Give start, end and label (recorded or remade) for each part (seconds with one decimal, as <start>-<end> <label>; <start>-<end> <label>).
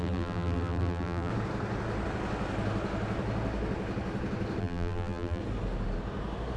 0.0-1.3 remade; 1.3-4.6 recorded; 4.6-5.4 remade; 5.4-6.6 recorded